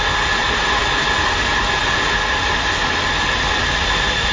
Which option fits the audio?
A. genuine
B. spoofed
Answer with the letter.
A